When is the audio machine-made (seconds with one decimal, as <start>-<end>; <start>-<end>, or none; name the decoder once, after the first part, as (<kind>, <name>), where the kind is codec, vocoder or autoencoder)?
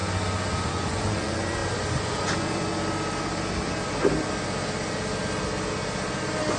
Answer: 0.7-2.7 (vocoder, Vocos)